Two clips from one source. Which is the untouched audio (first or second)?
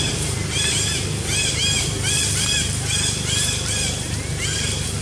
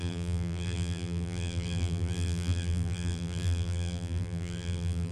first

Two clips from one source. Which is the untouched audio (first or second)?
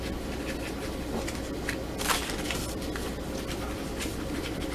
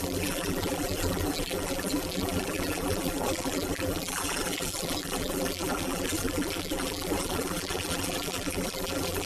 first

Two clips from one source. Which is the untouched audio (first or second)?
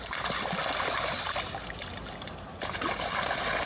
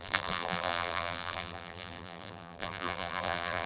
first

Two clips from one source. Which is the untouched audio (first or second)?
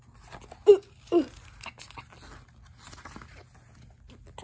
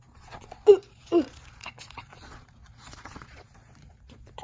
first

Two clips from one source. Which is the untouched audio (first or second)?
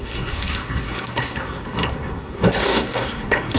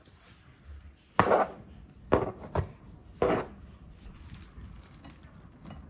second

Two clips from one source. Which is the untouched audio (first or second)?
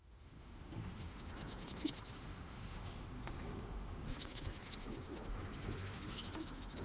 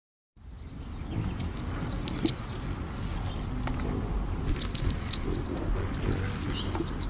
second